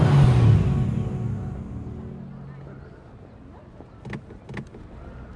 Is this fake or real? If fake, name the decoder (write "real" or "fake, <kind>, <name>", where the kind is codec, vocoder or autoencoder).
real